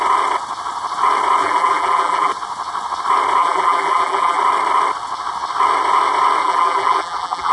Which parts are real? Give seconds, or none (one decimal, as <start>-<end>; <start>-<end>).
0.0-1.4; 2.3-3.4; 4.4-6.4